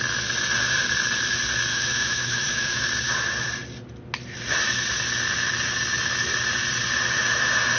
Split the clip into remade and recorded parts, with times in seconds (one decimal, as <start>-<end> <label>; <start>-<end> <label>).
0.0-1.7 recorded; 1.7-2.8 remade; 2.8-7.8 recorded